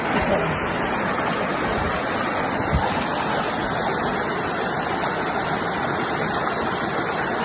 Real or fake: real